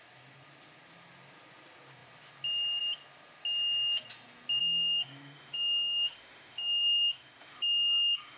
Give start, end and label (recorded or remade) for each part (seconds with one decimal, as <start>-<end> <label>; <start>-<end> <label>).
0.0-4.6 recorded; 4.6-8.4 remade